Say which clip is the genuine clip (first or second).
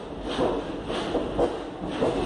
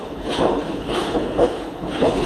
first